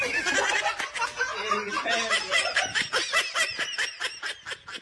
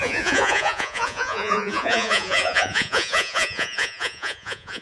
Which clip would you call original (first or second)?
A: first